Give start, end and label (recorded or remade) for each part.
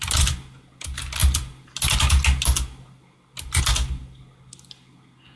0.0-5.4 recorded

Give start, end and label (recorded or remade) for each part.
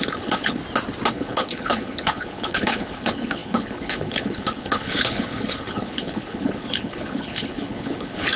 0.0-0.6 remade; 0.6-1.1 recorded; 1.1-8.4 remade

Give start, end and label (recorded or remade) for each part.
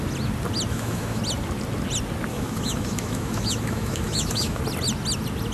0.0-0.7 recorded; 0.7-1.2 remade; 1.2-2.3 recorded; 2.3-4.6 remade; 4.6-5.5 recorded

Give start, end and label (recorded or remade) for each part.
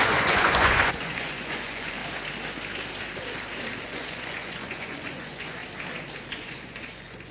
0.0-2.0 remade; 2.0-3.8 recorded; 3.8-5.6 remade; 5.6-6.3 recorded; 6.3-7.3 remade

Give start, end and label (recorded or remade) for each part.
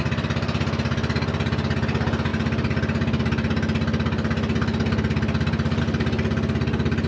0.0-7.1 recorded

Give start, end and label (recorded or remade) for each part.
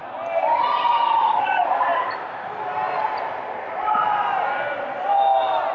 0.0-5.7 recorded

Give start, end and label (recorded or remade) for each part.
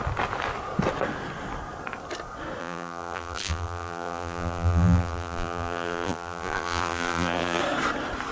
0.0-2.6 recorded; 2.6-7.6 remade; 7.6-8.3 recorded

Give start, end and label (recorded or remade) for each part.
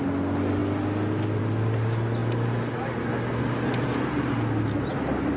0.0-5.4 recorded